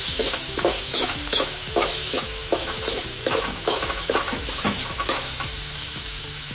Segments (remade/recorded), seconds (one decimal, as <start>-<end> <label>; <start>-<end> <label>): 0.0-6.5 remade